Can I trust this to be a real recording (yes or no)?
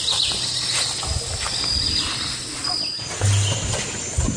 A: yes